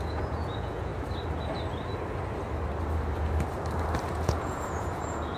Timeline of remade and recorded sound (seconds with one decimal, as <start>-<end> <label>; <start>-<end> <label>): 0.0-0.9 remade; 0.9-4.1 recorded; 4.1-5.4 remade